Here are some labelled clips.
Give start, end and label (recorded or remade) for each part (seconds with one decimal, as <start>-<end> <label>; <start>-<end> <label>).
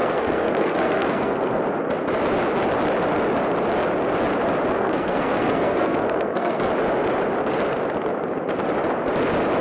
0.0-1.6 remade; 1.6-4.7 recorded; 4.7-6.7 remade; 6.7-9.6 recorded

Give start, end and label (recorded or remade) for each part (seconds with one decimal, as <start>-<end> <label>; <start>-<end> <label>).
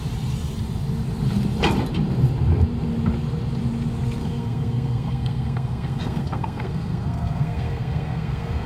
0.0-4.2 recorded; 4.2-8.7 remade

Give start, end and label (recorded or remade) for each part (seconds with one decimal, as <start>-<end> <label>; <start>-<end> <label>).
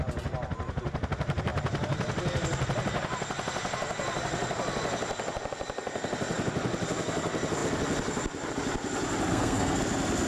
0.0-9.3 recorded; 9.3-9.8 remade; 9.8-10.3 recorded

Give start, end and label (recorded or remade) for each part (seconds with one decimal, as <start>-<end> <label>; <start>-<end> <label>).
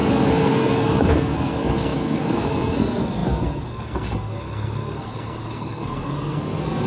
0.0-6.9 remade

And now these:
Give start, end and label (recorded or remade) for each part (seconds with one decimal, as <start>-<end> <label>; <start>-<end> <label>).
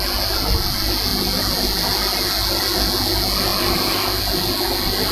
0.0-5.1 recorded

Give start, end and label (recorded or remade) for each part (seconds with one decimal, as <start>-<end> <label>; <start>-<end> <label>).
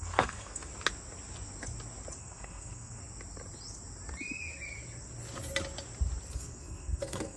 0.0-0.7 remade; 0.7-2.2 recorded; 2.2-3.0 remade; 3.0-6.3 recorded; 6.3-7.4 remade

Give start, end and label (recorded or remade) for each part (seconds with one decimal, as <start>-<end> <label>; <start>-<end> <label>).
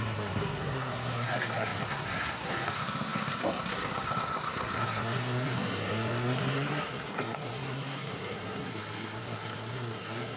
0.0-10.4 remade